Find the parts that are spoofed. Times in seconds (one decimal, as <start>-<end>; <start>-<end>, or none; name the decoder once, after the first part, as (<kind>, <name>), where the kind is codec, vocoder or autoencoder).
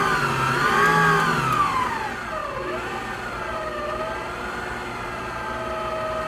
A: none